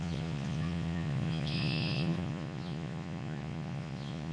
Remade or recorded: remade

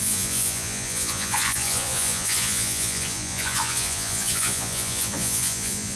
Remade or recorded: remade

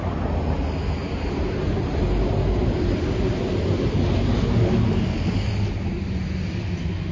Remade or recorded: recorded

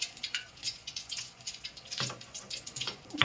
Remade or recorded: remade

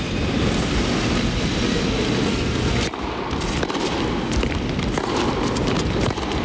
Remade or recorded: recorded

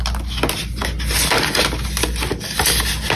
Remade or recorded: recorded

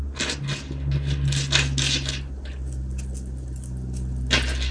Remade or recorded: recorded